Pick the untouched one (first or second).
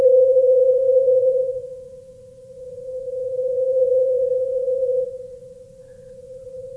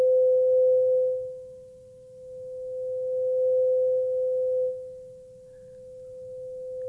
second